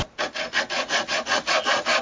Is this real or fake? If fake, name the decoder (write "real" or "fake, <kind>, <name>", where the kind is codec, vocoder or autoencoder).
real